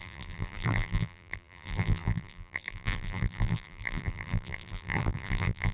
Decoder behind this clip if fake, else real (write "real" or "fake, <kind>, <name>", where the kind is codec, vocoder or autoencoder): fake, vocoder, BigVGAN v2